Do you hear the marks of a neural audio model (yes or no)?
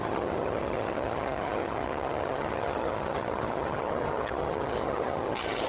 yes